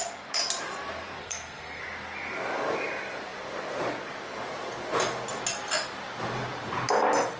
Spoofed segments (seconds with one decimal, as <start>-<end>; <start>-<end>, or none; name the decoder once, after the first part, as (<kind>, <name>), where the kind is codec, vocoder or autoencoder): 1.2-1.8 (codec, SNAC)